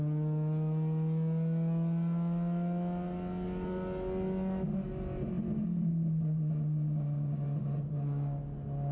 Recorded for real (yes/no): yes